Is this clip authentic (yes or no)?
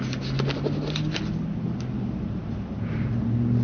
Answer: yes